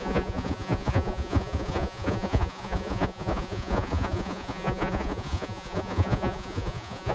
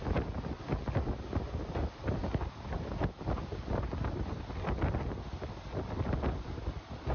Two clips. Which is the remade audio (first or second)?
first